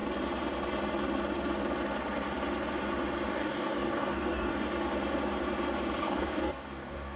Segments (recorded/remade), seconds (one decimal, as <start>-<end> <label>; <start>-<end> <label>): 0.0-3.3 recorded; 3.3-4.5 remade; 4.5-6.0 recorded; 6.0-7.2 remade